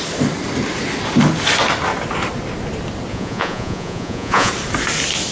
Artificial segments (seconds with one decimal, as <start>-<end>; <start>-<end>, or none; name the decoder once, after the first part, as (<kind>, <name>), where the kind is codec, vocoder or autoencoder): 3.1-4.5 (vocoder, Vocos)